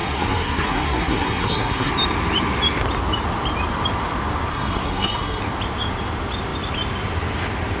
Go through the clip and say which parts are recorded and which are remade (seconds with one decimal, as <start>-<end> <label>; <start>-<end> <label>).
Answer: 0.0-1.9 remade; 1.9-4.5 recorded; 4.5-5.4 remade; 5.4-7.8 recorded